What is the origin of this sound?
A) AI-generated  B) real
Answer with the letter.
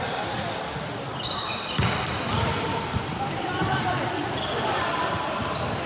A